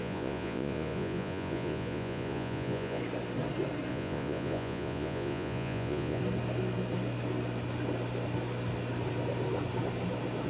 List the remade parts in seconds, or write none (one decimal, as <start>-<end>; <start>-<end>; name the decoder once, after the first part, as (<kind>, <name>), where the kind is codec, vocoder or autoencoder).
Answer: 0.0-3.0 (vocoder, Vocos); 3.9-6.2